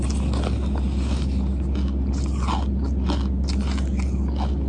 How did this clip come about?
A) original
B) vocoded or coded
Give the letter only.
A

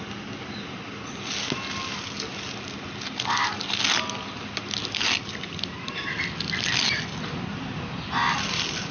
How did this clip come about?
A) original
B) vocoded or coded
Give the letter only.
A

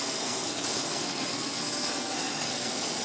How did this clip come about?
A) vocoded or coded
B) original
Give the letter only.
A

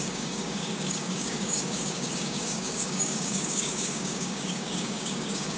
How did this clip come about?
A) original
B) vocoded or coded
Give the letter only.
B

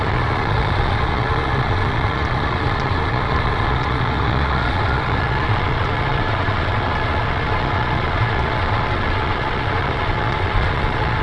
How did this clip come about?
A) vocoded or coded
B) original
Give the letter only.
A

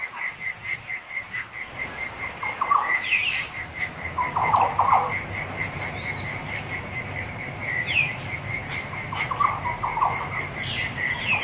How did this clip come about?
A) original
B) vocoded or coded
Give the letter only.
B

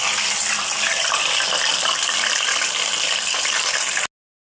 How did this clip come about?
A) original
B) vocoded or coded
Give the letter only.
A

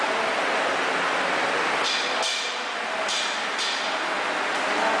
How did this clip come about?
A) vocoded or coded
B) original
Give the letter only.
B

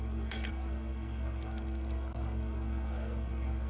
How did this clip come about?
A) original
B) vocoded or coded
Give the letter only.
B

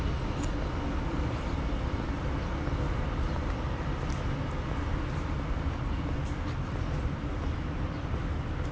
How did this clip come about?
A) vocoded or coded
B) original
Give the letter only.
B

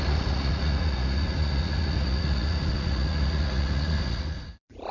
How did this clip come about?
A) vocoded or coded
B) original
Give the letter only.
A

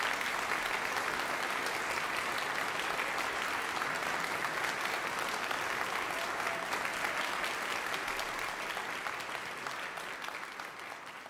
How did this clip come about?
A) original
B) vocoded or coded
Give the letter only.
A